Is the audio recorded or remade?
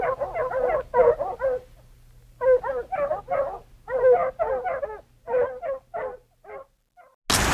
recorded